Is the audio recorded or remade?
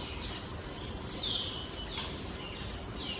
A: recorded